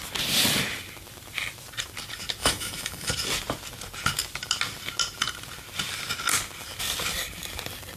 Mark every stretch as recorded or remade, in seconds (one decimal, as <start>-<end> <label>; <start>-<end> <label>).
0.0-2.4 recorded; 2.4-3.1 remade; 3.1-8.0 recorded